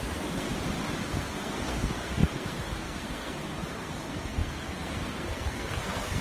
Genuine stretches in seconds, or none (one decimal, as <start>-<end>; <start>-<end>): 0.5-1.1